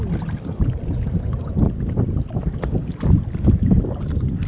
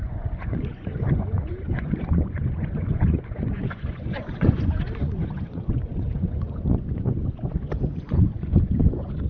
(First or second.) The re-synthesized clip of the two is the second